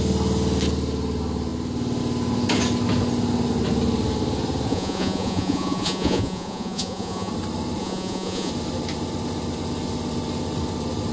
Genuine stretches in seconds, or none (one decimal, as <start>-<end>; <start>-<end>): 0.0-4.7; 7.3-7.8; 8.5-11.1